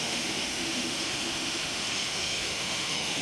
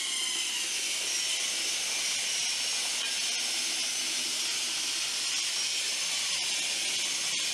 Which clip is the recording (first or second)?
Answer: second